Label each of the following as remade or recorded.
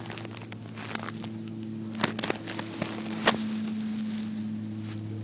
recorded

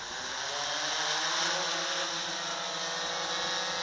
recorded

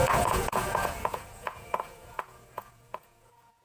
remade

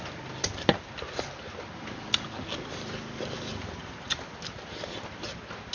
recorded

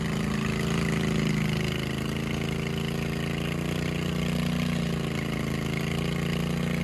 recorded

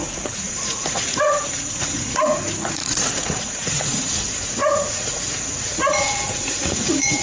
remade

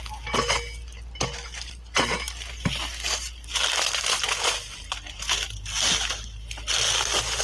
recorded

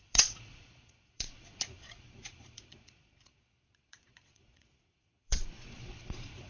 remade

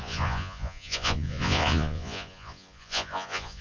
remade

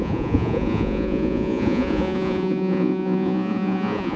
remade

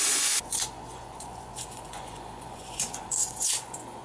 remade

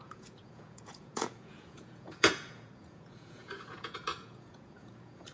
remade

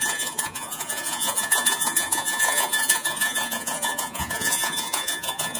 remade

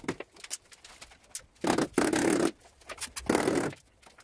recorded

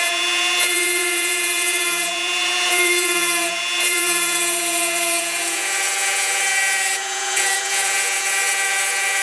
remade